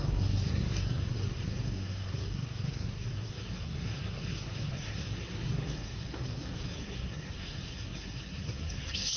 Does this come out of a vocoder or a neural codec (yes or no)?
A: yes